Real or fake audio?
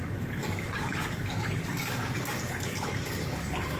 fake